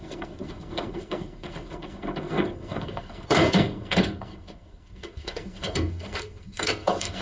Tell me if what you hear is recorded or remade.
remade